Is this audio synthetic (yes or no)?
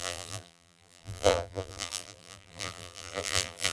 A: yes